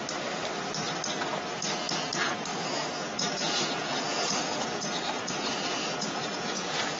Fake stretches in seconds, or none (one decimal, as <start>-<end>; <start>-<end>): 2.5-7.0